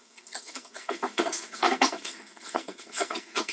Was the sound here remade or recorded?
remade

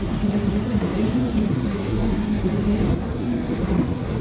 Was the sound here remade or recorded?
remade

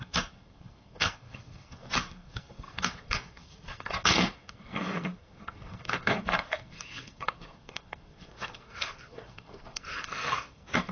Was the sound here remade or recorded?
remade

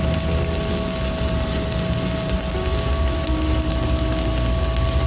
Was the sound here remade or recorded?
recorded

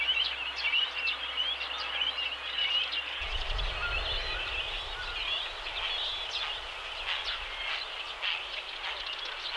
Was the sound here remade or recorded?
recorded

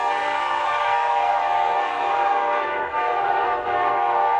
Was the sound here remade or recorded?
remade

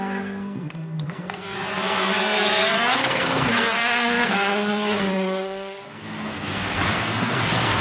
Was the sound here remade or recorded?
remade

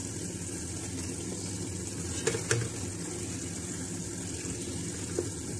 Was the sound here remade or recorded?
recorded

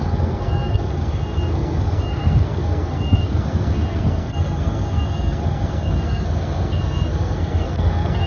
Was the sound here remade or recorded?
remade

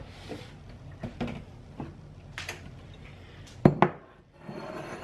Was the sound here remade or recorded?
recorded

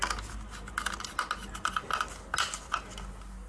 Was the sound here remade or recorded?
recorded